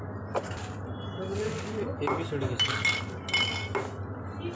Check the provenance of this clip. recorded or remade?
recorded